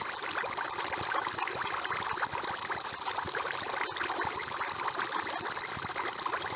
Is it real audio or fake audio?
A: real